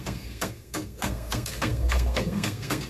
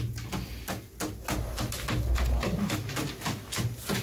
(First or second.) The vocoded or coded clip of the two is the first